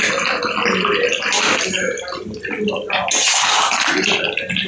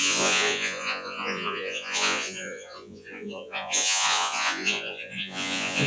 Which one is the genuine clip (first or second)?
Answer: first